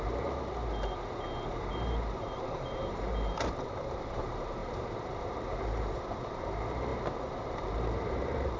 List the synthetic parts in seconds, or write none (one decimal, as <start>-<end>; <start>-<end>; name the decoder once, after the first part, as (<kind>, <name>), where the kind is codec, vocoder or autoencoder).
0.0-0.5 (vocoder, BigVGAN v2); 1.5-8.6